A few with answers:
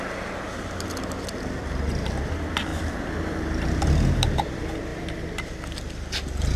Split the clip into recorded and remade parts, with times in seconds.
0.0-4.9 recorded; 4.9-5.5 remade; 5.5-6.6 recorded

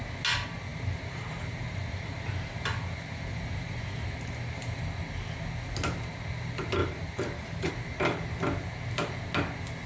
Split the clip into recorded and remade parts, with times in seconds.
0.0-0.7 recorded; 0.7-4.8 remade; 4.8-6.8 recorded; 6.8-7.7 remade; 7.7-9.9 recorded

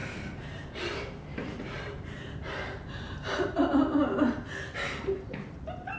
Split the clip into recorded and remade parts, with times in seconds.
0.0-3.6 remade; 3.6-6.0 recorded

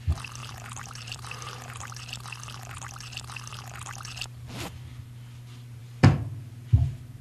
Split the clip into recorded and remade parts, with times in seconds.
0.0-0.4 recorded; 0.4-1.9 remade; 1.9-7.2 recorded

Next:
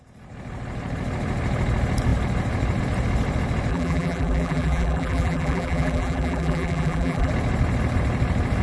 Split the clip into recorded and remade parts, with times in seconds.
0.0-3.7 recorded; 3.7-7.3 remade; 7.3-8.6 recorded

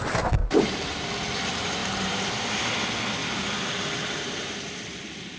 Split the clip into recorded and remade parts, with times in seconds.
0.0-0.4 recorded; 0.4-1.1 remade; 1.1-1.8 recorded; 1.8-2.3 remade; 2.3-3.2 recorded; 3.2-4.6 remade; 4.6-5.4 recorded